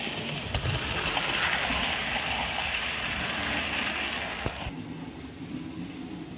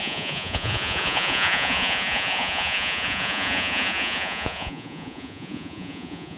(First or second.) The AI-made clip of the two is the second